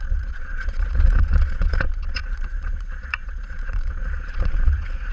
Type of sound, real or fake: fake